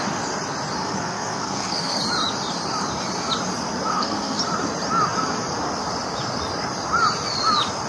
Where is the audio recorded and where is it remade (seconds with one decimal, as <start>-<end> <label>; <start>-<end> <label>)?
0.0-0.8 recorded; 0.8-2.0 remade; 2.0-3.9 recorded; 3.9-4.4 remade; 4.4-7.9 recorded